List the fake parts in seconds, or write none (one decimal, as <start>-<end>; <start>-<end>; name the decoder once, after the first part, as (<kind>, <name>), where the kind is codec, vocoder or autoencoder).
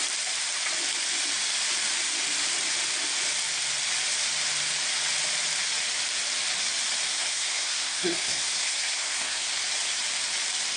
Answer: 7.1-9.5 (codec, SNAC)